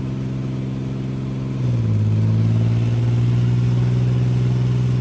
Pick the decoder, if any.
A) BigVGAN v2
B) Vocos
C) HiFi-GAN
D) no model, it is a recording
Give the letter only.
D